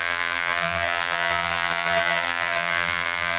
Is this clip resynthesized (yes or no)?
yes